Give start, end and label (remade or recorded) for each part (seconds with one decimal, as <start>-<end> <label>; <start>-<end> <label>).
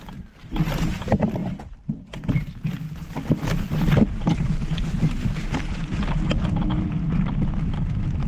0.0-8.3 recorded